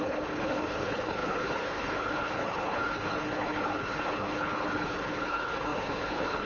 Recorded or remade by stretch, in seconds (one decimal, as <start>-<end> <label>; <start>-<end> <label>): 0.0-6.5 remade